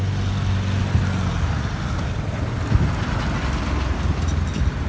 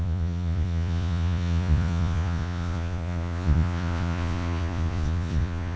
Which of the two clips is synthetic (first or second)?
second